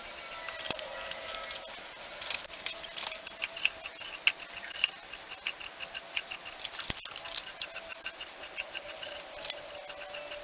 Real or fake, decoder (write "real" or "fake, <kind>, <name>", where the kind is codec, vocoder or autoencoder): real